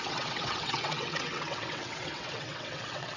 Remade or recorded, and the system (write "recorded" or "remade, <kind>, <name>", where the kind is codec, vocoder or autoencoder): remade, vocoder, WaveNeXt